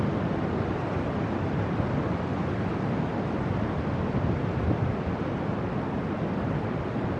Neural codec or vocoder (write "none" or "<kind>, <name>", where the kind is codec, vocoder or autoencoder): none